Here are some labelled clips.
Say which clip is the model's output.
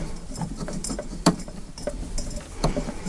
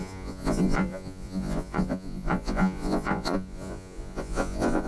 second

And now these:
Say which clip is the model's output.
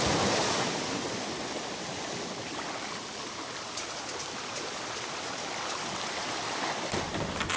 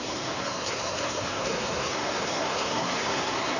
second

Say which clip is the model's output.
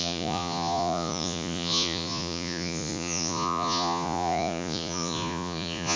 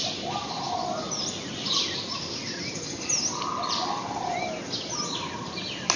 first